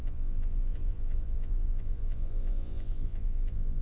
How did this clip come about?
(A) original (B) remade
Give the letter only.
B